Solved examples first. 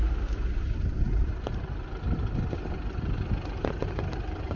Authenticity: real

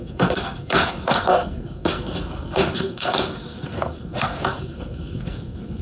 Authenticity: fake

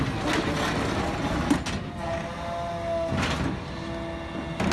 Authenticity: real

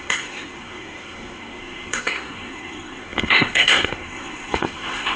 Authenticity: fake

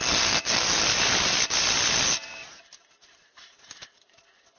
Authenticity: real